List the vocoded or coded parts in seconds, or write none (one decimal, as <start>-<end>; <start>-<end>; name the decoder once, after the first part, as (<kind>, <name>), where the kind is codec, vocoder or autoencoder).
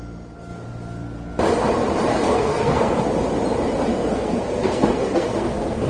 2.1-3.0 (codec, SNAC); 3.9-5.9